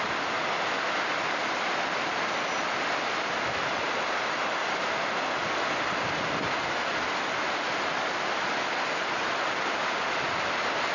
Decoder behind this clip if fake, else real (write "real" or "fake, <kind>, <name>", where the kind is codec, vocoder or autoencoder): real